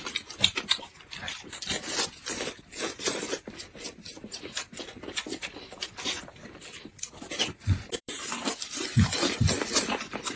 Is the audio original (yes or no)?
no